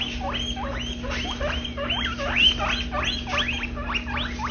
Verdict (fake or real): real